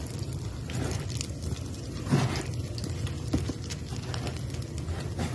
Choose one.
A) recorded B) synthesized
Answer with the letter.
A